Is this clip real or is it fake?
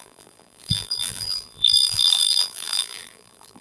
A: fake